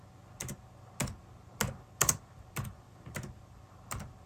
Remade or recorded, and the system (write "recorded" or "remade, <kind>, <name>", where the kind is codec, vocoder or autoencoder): recorded